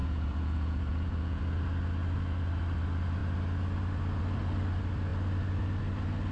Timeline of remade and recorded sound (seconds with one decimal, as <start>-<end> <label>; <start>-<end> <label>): 0.0-1.4 remade; 1.4-6.3 recorded

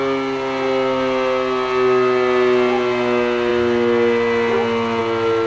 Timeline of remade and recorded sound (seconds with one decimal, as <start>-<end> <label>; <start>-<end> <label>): 0.0-5.5 recorded